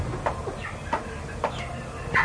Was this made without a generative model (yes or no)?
yes